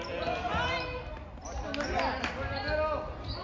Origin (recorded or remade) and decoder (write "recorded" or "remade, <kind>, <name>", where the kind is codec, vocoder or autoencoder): recorded